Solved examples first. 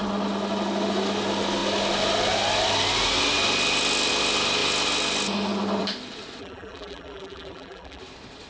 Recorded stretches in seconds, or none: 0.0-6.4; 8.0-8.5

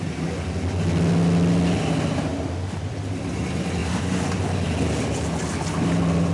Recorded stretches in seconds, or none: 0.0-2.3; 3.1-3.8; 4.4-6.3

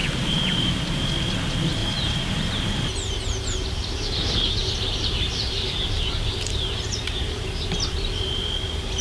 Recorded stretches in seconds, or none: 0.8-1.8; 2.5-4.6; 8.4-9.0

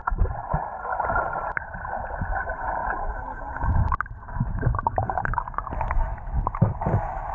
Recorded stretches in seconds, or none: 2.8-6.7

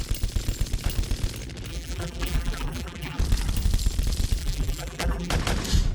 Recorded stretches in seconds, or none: 0.0-1.7; 3.2-4.4; 5.3-5.9

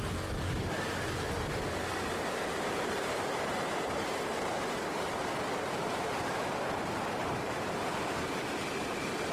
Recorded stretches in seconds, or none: 0.0-1.9; 5.2-5.8; 8.4-9.3

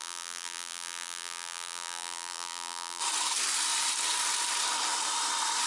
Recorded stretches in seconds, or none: 3.0-5.7

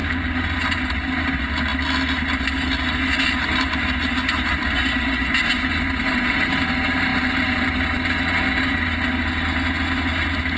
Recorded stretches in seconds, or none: 0.9-7.1; 7.8-10.6